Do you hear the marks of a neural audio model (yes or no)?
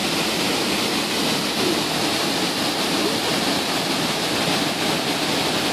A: no